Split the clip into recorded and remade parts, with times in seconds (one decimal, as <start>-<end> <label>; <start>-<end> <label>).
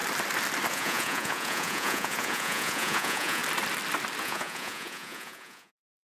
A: 0.0-0.7 recorded; 0.7-3.4 remade; 3.4-4.2 recorded; 4.2-6.0 remade